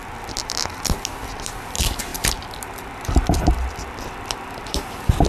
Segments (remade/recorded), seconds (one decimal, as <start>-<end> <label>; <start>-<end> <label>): 0.0-0.7 remade; 0.7-1.7 recorded; 1.7-5.3 remade